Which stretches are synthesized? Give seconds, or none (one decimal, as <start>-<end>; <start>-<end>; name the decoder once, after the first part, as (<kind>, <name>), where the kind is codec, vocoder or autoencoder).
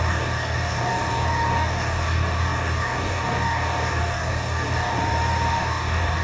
0.0-5.0 (codec, DAC); 5.5-6.2